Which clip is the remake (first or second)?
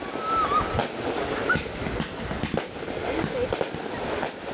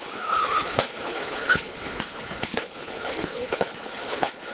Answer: second